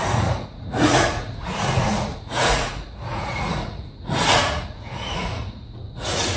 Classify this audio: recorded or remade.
remade